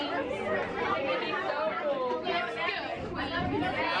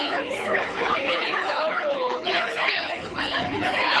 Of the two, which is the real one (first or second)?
first